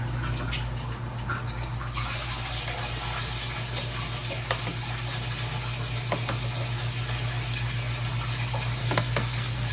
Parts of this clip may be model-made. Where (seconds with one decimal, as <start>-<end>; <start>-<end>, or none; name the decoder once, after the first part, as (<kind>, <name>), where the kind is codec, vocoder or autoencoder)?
8.8-9.7 (codec, SNAC)